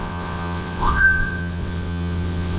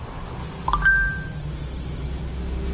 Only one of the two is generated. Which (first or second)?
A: first